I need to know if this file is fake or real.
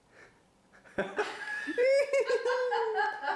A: real